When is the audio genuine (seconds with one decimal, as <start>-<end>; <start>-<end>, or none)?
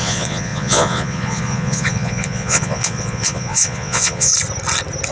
4.3-5.1